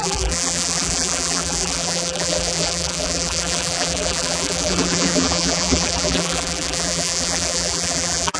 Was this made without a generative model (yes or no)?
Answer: no